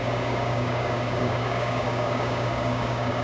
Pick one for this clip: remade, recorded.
remade